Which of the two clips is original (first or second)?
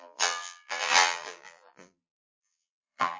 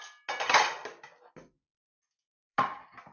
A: second